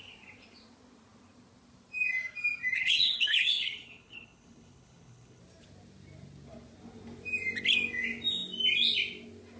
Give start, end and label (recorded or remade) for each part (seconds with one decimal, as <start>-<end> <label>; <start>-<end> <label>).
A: 0.0-2.8 recorded; 2.8-5.4 remade; 5.4-9.6 recorded